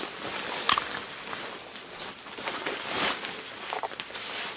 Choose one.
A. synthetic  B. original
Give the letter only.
B